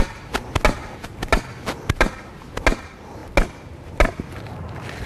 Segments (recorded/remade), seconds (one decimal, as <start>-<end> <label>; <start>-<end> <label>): 0.0-5.1 recorded